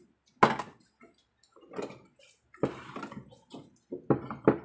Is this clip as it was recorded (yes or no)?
yes